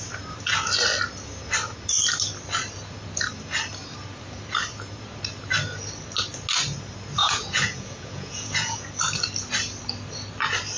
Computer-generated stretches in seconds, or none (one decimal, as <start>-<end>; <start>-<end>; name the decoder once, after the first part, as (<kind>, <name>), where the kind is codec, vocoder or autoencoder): 7.2-8.9 (vocoder, Vocos)